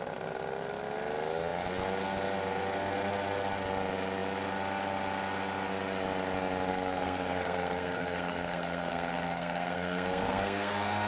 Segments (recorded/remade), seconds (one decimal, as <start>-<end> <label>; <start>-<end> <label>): 0.0-6.7 recorded; 6.7-11.1 remade